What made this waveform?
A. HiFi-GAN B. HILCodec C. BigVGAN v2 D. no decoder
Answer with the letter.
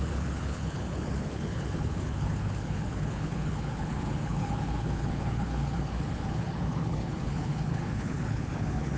B